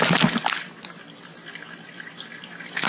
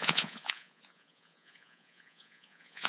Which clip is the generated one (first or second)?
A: second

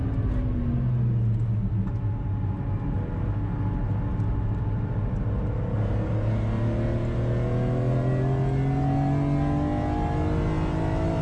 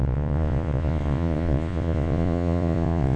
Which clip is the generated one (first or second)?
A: second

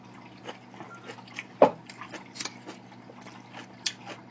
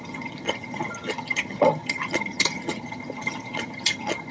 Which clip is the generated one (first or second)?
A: second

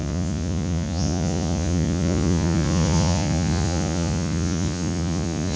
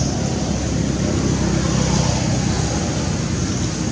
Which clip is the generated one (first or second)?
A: first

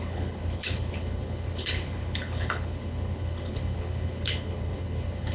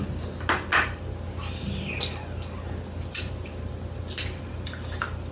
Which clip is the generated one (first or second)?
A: first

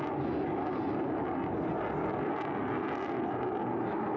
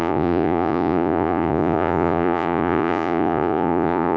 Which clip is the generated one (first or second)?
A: second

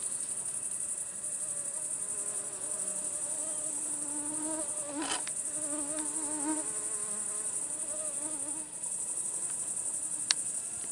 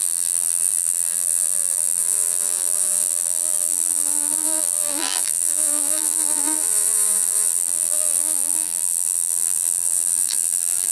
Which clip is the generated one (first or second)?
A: second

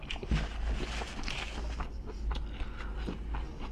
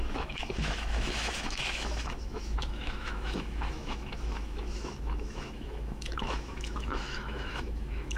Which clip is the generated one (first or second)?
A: second